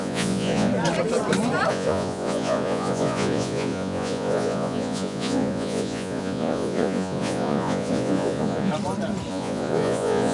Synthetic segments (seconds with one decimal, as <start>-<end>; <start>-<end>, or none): 0.0-0.7; 1.7-8.7; 9.3-10.3